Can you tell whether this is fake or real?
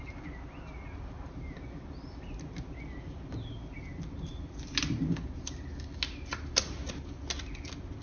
real